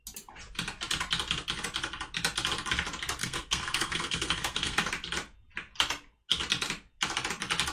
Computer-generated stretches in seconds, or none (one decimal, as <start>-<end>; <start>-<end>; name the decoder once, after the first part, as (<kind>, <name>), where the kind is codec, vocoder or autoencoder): 3.2-4.9 (codec, SNAC)